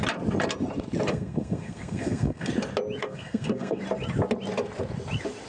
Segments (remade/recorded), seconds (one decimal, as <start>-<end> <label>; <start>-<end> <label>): 0.0-1.1 recorded; 1.1-2.5 remade; 2.5-3.0 recorded; 3.0-3.8 remade; 3.8-5.5 recorded